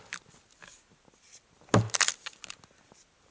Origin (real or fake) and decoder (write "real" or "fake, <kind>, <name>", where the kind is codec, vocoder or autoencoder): real